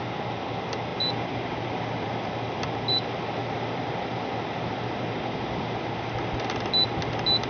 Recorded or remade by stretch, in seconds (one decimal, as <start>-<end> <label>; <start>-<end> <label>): 0.0-7.5 recorded